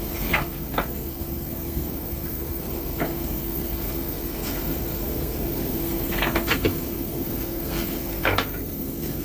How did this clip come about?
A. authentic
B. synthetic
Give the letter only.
B